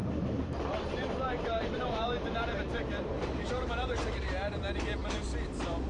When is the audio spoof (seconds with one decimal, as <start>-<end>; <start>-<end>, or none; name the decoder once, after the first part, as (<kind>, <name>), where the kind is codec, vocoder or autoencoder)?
0.0-5.9 (vocoder, BigVGAN v2)